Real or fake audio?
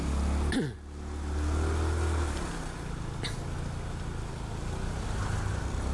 real